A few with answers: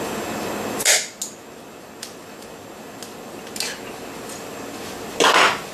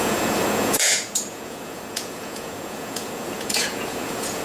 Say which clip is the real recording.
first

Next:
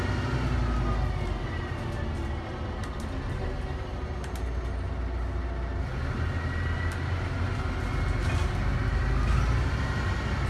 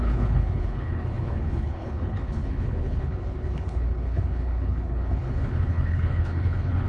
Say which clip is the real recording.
first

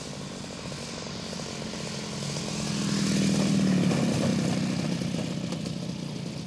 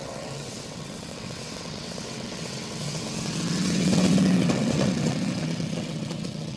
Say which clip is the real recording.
first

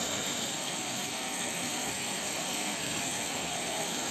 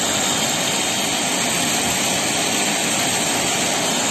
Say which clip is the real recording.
second